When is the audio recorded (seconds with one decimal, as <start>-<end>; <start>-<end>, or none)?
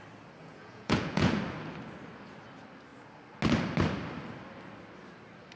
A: 0.0-0.4; 1.4-5.6